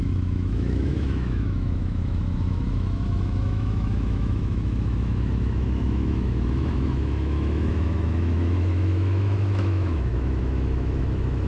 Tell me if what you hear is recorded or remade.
remade